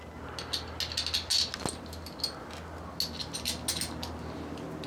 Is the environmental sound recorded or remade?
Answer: recorded